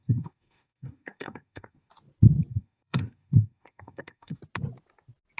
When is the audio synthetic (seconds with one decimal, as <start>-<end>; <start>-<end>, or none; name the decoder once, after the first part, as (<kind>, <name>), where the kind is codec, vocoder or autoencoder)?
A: 0.0-1.9 (codec, SNAC); 2.5-4.4